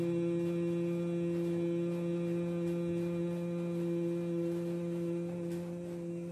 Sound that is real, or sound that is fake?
real